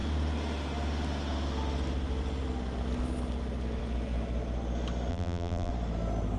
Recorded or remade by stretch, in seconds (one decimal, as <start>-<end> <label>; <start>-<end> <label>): 0.0-5.1 recorded; 5.1-5.7 remade; 5.7-6.4 recorded